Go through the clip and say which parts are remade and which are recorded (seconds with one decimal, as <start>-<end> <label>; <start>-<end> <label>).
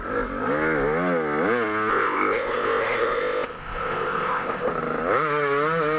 0.0-1.9 recorded; 1.9-4.7 remade; 4.7-6.0 recorded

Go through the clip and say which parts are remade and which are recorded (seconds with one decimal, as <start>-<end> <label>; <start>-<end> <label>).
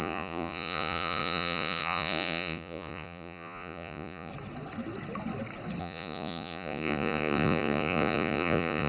0.0-4.3 remade; 4.3-5.8 recorded; 5.8-8.9 remade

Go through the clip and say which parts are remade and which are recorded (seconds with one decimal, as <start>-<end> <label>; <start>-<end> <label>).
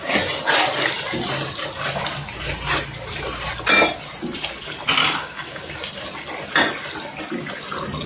0.0-5.0 recorded; 5.0-5.7 remade; 5.7-8.1 recorded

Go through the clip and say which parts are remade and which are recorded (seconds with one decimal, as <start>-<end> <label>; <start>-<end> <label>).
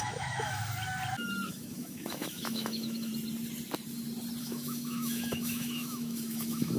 0.0-0.6 remade; 0.6-1.5 recorded; 1.5-3.1 remade; 3.1-4.4 recorded; 4.4-6.8 remade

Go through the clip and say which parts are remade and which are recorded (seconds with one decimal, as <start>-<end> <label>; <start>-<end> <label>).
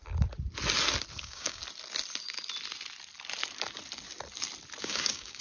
0.0-1.2 recorded; 1.2-1.6 remade; 1.6-4.8 recorded; 4.8-5.4 remade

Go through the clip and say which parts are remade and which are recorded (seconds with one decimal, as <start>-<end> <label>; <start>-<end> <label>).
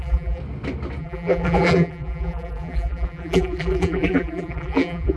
0.0-0.4 remade; 0.4-1.0 recorded; 1.0-5.2 remade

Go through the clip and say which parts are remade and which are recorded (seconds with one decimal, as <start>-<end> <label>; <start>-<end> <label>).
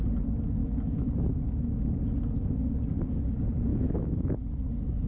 0.0-0.6 recorded; 0.6-1.1 remade; 1.1-3.7 recorded; 3.7-4.5 remade; 4.5-5.1 recorded